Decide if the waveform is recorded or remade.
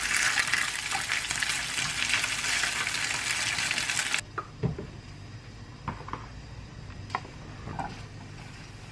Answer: recorded